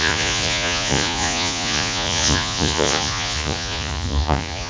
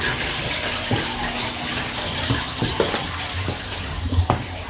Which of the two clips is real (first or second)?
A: second